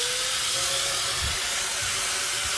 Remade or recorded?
recorded